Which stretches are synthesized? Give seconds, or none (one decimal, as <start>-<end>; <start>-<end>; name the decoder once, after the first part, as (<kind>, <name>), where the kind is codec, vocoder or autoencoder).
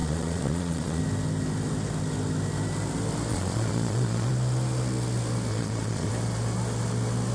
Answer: 0.0-1.0 (vocoder, Vocos); 3.3-4.3; 5.5-6.1